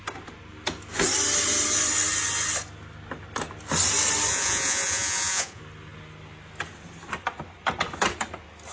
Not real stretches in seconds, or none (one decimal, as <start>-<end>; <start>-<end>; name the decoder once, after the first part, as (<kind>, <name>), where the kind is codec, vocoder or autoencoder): 4.3-5.6 (vocoder, Vocos)